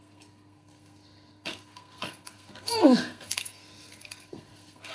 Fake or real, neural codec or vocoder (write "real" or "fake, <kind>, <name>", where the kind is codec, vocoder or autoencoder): fake, codec, SNAC